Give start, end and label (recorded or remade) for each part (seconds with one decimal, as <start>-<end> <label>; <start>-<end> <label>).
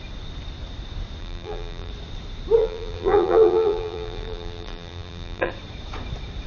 0.0-1.2 recorded; 1.2-1.9 remade; 1.9-2.6 recorded; 2.6-5.5 remade; 5.5-6.5 recorded